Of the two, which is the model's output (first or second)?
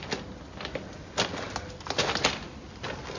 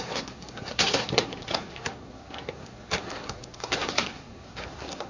second